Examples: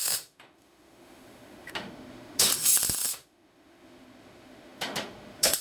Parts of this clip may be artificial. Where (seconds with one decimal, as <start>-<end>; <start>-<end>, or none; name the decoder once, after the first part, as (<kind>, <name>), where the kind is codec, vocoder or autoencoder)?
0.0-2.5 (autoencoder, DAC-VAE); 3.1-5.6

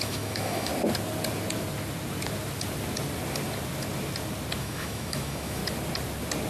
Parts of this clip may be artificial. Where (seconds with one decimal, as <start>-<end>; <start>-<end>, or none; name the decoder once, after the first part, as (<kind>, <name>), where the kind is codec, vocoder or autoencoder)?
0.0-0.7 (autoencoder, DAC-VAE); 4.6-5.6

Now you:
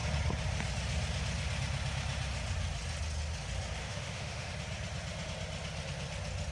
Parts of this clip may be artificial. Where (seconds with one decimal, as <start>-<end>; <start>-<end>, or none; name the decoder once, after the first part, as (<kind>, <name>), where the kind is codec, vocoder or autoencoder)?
3.8-4.5 (autoencoder, DAC-VAE)